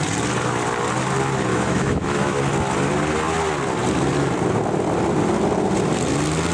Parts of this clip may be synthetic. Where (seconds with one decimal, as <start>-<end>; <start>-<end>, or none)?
1.5-2.4